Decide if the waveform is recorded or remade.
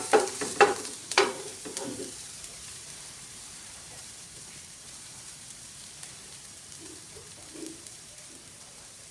remade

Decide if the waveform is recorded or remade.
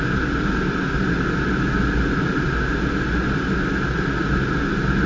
recorded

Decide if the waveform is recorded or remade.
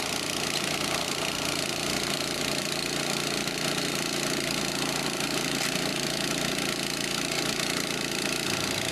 recorded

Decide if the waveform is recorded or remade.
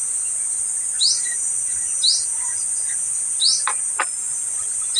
recorded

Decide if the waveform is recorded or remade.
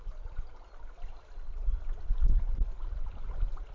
remade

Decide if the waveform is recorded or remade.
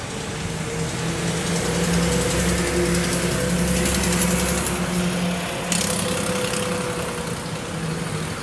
recorded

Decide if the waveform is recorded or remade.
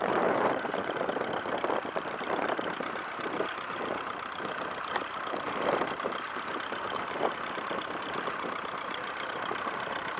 remade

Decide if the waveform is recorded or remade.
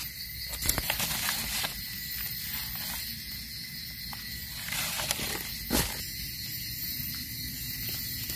recorded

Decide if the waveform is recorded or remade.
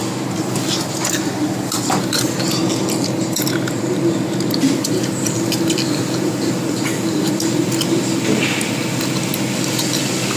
recorded